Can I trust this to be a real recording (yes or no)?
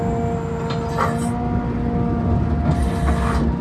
yes